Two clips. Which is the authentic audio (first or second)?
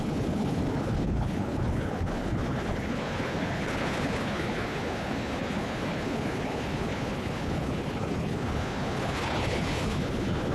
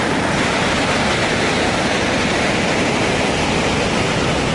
second